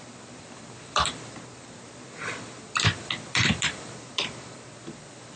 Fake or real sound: fake